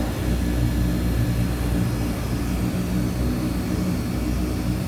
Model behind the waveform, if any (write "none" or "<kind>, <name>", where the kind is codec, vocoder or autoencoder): none